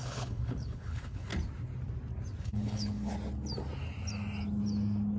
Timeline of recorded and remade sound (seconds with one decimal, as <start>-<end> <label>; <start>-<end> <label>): 0.0-1.3 remade; 1.3-2.4 recorded; 2.4-3.1 remade; 3.1-5.2 recorded